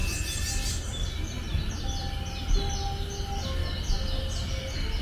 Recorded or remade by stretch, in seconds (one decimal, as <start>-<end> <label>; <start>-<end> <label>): 0.0-5.0 recorded